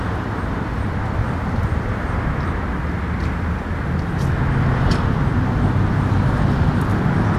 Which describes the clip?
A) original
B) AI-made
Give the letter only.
B